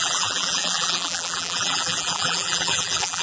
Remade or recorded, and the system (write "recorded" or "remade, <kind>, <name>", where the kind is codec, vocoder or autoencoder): remade, vocoder, BigVGAN v2